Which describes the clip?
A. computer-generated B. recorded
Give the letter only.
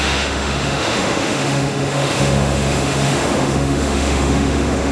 A